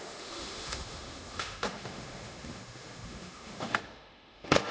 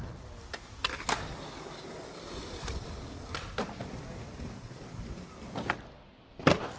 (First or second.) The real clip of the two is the second